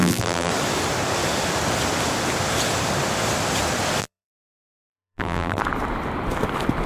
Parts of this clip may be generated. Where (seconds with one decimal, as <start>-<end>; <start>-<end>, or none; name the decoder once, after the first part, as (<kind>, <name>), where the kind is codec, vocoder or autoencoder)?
0.0-0.5 (vocoder, BigVGAN v2); 4.0-5.6